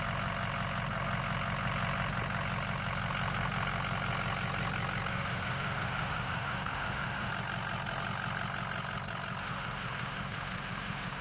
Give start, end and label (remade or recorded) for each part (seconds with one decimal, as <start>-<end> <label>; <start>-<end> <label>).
0.0-5.1 recorded; 5.1-7.3 remade; 7.3-9.4 recorded; 9.4-11.2 remade